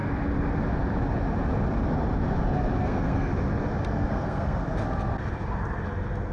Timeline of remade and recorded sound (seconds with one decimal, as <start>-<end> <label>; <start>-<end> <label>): 0.0-2.8 recorded; 2.8-3.3 remade; 3.3-4.0 recorded; 4.0-4.6 remade; 4.6-6.3 recorded